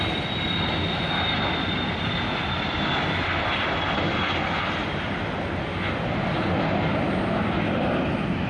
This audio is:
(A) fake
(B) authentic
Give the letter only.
B